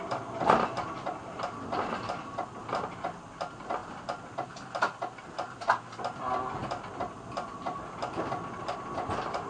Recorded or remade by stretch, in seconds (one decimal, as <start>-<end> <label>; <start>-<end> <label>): 0.0-9.5 recorded